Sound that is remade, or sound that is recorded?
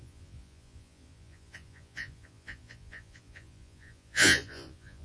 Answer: remade